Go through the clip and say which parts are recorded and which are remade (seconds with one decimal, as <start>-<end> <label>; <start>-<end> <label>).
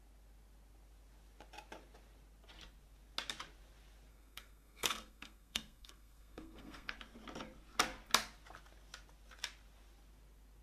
0.0-4.1 recorded; 4.1-6.9 remade; 6.9-10.6 recorded